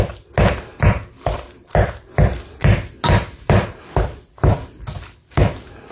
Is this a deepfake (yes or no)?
no